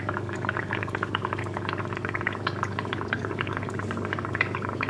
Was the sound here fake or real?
fake